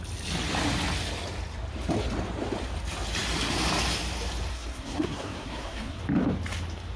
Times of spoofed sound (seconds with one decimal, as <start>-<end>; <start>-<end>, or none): 4.5-6.0